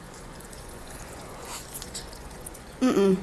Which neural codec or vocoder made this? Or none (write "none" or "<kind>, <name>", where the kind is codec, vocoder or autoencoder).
vocoder, Vocos